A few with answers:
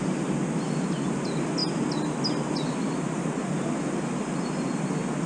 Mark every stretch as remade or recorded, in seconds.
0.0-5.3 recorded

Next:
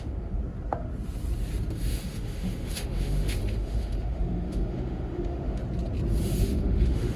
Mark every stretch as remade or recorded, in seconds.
0.0-0.4 remade; 0.4-1.7 recorded; 1.7-5.6 remade; 5.6-6.2 recorded; 6.2-7.2 remade

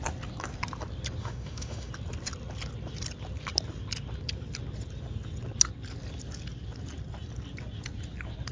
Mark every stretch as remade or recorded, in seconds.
0.0-1.2 recorded; 1.2-1.9 remade; 1.9-8.5 recorded

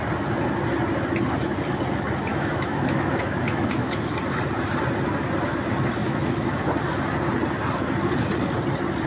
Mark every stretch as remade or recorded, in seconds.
0.0-2.3 recorded; 2.3-4.1 remade; 4.1-6.0 recorded; 6.0-6.6 remade; 6.6-9.1 recorded

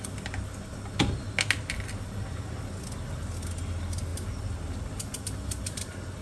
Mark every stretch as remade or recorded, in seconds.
0.0-6.2 recorded

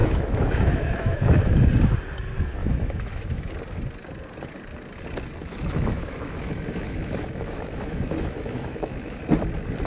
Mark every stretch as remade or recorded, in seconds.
0.0-1.7 remade; 1.7-2.6 recorded; 2.6-3.5 remade; 3.5-5.4 recorded; 5.4-9.2 remade; 9.2-9.9 recorded

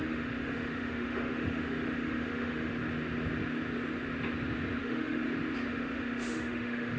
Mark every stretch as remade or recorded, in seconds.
0.0-2.7 remade; 2.7-4.8 recorded; 4.8-5.2 remade; 5.2-5.7 recorded; 5.7-7.0 remade